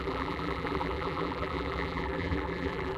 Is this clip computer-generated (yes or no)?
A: yes